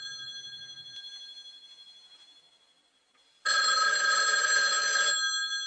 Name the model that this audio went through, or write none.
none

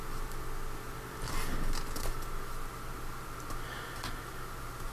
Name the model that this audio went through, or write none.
none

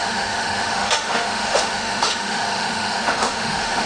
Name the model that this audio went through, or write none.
autoencoder, DAC-VAE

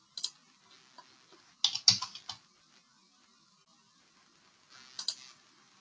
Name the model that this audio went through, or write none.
none